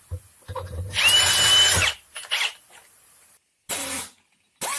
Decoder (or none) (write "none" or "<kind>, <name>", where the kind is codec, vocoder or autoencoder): none